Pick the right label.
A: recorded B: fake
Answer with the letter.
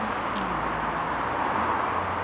A